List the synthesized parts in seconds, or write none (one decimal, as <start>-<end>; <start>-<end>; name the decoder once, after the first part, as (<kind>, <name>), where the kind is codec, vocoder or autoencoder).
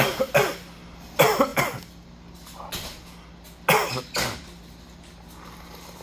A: none